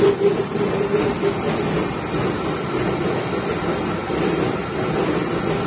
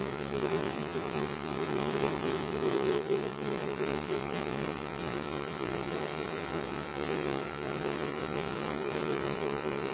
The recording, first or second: first